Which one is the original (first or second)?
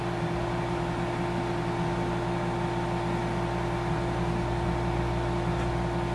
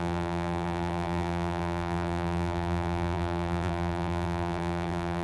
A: first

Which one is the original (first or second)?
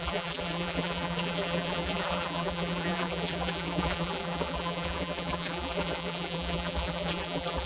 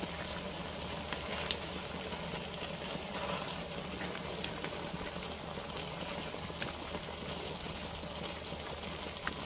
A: second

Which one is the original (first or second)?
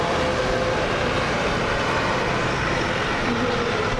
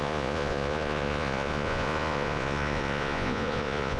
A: first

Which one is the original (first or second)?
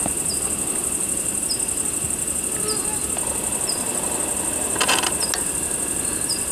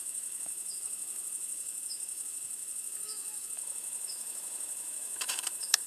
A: first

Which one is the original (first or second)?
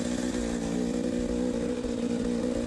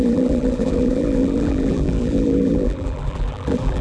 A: first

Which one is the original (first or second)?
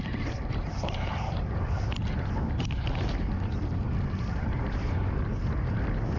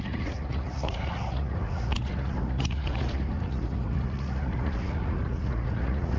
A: first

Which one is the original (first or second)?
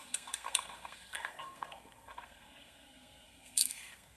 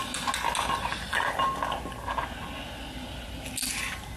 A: second